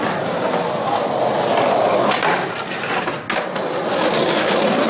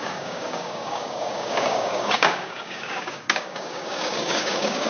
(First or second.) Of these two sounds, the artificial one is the second